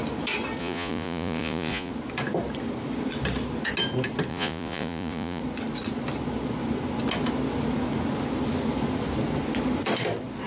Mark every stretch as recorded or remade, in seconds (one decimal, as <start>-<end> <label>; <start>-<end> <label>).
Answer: 0.0-0.6 recorded; 0.6-1.9 remade; 1.9-4.3 recorded; 4.3-5.4 remade; 5.4-10.5 recorded